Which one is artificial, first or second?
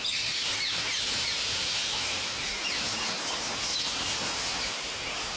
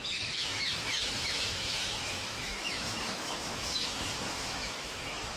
second